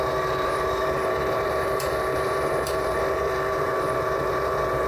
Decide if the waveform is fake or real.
fake